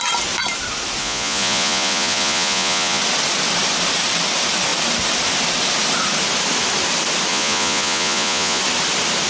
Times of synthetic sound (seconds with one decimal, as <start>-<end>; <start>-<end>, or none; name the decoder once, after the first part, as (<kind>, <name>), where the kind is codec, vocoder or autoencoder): 1.0-3.0 (vocoder, Vocos); 7.3-8.6